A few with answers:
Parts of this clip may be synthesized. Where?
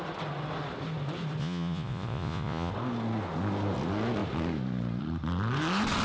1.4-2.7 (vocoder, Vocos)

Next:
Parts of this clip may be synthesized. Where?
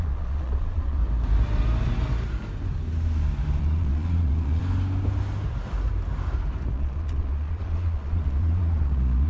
0.0-1.0 (vocoder, Vocos); 3.6-4.6; 6.7-9.3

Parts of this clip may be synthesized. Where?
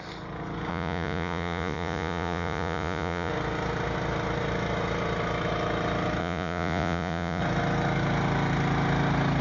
0.7-3.3 (vocoder, Vocos); 6.2-7.4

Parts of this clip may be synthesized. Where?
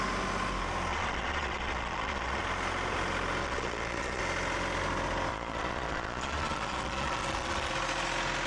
0.9-2.4 (vocoder, Vocos); 3.4-4.2; 5.3-7.7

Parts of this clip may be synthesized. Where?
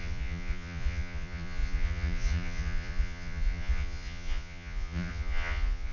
0.0-5.9 (vocoder, Vocos)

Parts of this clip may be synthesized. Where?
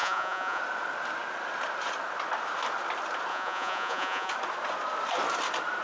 0.0-0.6 (vocoder, Vocos); 3.3-4.3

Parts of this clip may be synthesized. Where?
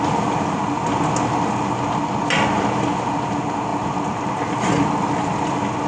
none